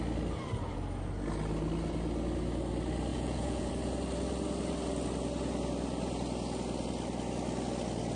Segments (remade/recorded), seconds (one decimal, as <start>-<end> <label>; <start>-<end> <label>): 0.0-3.1 recorded; 3.1-3.7 remade; 3.7-8.2 recorded